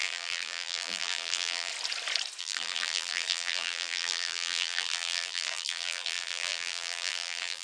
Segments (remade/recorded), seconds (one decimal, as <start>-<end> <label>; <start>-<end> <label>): 0.0-1.7 remade; 1.7-2.4 recorded; 2.4-7.6 remade